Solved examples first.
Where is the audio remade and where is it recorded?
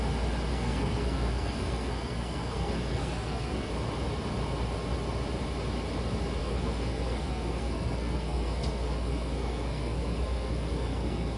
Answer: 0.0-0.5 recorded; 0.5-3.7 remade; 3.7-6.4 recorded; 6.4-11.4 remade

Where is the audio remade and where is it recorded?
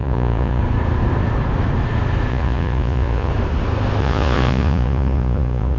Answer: 0.0-0.6 remade; 0.6-2.3 recorded; 2.3-3.3 remade; 3.3-4.0 recorded; 4.0-5.8 remade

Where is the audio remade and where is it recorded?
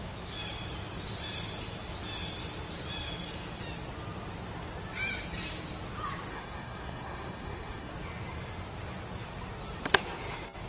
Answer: 0.0-6.3 recorded; 6.3-7.9 remade; 7.9-10.7 recorded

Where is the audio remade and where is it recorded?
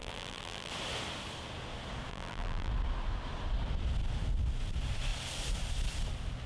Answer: 0.0-0.7 remade; 0.7-2.1 recorded; 2.1-2.7 remade; 2.7-6.5 recorded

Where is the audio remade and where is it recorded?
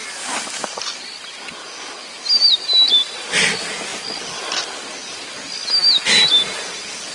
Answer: 0.0-7.1 recorded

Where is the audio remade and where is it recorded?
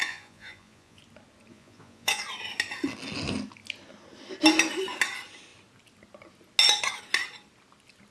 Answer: 0.0-1.0 remade; 1.0-1.5 recorded; 1.5-2.2 remade; 2.2-8.1 recorded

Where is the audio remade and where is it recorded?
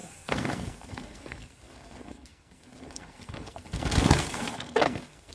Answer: 0.0-5.3 remade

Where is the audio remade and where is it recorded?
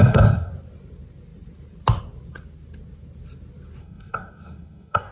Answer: 0.0-0.5 remade; 0.5-3.8 recorded; 3.8-5.1 remade